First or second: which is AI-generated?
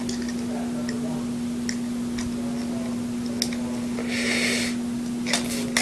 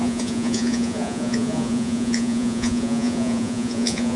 second